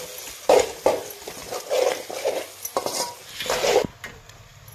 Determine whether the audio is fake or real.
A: real